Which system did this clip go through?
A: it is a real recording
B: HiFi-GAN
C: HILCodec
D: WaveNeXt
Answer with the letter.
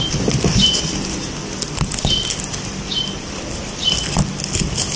A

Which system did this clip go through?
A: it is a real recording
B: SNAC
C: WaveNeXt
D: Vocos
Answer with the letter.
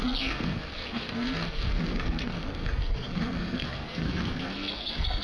B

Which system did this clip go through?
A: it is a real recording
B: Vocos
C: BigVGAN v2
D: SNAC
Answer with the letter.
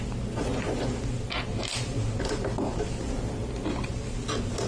A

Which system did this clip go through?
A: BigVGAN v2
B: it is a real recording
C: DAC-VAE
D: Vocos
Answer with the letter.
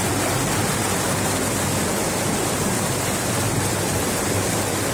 B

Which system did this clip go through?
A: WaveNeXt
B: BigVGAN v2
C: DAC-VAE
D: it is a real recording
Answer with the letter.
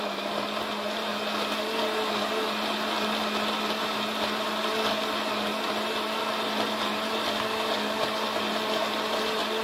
D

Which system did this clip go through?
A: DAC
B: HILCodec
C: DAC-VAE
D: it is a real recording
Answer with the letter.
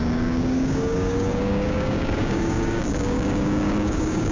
A